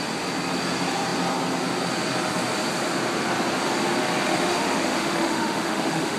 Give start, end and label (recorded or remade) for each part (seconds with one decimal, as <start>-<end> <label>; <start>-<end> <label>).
0.0-4.3 recorded; 4.3-6.2 remade